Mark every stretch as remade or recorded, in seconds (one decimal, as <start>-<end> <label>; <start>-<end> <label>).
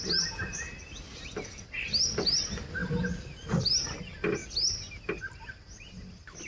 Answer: 0.0-6.5 recorded